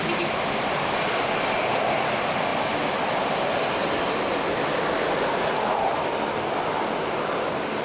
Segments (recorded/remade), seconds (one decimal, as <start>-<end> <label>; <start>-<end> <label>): 0.0-5.3 recorded; 5.3-6.0 remade; 6.0-7.8 recorded